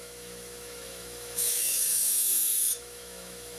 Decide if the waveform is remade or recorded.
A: remade